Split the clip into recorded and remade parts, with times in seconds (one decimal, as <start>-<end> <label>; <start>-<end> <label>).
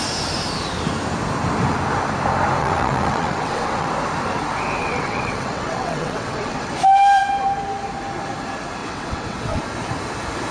0.0-2.6 recorded; 2.6-3.9 remade; 3.9-4.8 recorded; 4.8-6.7 remade; 6.7-8.8 recorded; 8.8-9.6 remade; 9.6-10.5 recorded